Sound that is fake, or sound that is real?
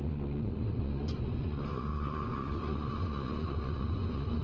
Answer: fake